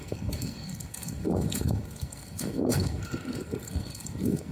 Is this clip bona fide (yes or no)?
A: no